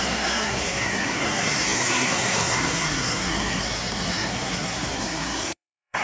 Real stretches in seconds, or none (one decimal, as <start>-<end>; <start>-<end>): none